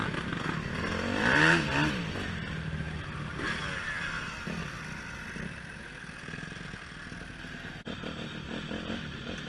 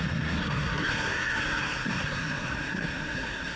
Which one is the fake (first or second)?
second